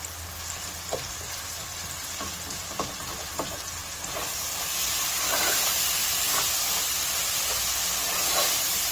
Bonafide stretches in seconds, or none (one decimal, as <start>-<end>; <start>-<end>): 0.0-8.9